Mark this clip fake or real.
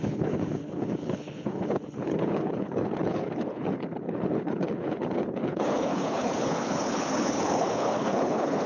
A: fake